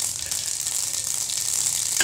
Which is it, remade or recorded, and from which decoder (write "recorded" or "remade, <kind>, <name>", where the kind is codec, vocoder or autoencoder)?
recorded